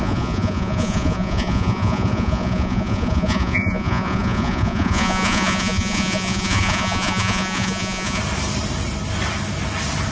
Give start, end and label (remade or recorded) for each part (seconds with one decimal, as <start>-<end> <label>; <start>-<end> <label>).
0.0-8.2 remade; 8.2-10.1 recorded